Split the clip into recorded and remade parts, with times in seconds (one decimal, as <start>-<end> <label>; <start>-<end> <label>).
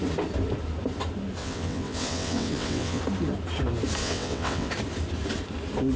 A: 0.0-1.4 recorded; 1.4-3.0 remade; 3.0-4.0 recorded; 4.0-4.7 remade; 4.7-6.0 recorded